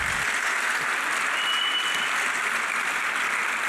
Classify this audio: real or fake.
real